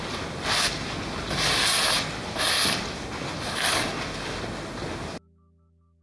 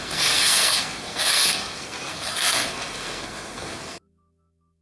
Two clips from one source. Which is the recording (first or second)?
first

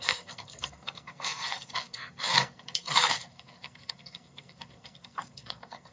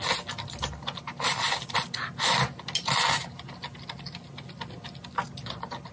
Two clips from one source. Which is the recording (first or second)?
second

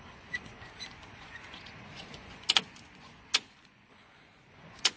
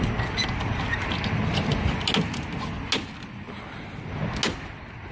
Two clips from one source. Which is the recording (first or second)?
second